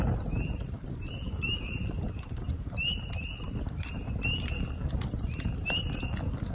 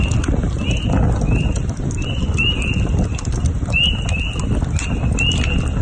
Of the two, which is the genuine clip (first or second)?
second